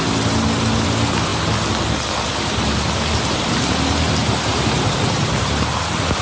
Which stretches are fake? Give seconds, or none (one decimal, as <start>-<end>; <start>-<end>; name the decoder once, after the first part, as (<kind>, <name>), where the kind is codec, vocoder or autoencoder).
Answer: none